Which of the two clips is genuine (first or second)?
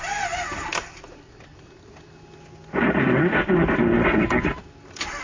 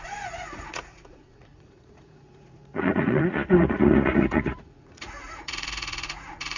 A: first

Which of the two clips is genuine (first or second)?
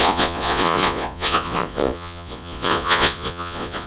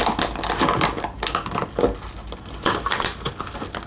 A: second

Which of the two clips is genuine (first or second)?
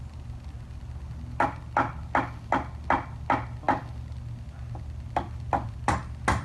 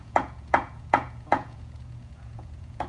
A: first